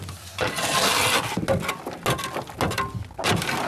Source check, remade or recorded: recorded